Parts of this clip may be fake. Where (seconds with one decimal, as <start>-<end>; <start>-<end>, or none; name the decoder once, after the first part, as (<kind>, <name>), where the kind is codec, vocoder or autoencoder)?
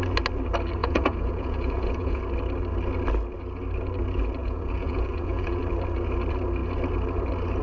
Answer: 0.8-2.2 (vocoder, Vocos); 4.4-5.6